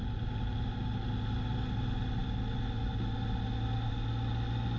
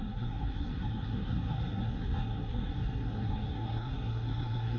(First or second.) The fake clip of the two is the second